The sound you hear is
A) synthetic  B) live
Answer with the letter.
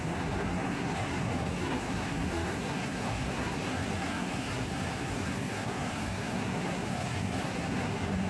A